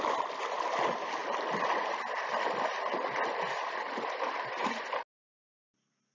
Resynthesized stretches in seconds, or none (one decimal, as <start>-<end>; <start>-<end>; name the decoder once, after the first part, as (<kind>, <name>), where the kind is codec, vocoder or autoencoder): 1.2-4.9 (vocoder, BigVGAN v2)